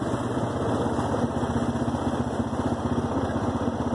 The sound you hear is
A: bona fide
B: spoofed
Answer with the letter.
A